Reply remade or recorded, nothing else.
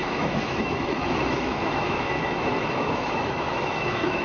remade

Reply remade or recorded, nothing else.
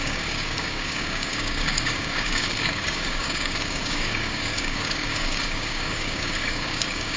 remade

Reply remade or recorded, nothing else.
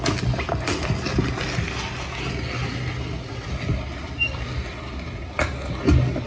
recorded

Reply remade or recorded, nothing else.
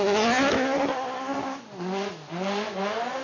recorded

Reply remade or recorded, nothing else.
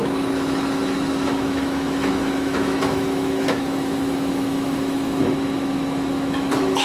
remade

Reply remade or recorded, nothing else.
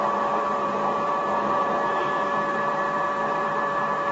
remade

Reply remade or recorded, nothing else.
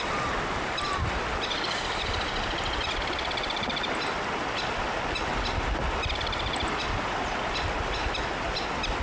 recorded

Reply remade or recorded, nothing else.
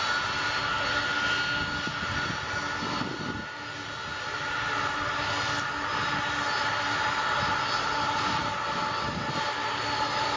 recorded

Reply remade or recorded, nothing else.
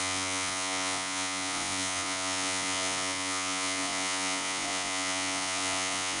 remade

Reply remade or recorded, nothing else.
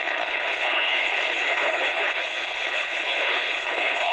remade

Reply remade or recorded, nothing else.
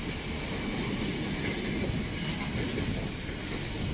recorded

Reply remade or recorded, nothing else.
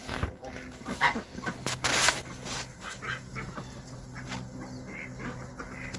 recorded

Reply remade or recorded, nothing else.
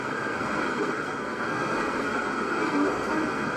remade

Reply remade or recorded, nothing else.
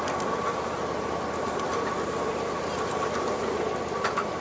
recorded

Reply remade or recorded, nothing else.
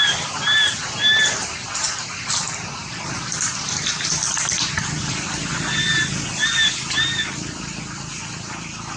recorded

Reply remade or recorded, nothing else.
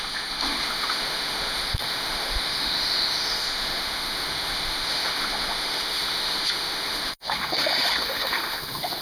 remade